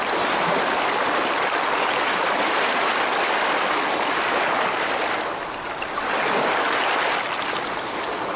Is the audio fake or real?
real